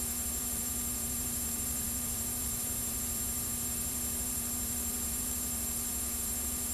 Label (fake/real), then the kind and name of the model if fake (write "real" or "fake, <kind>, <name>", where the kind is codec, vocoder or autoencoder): fake, vocoder, BigVGAN v2